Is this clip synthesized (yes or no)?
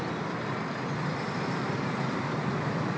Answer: no